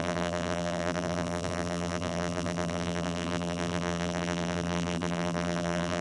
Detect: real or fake fake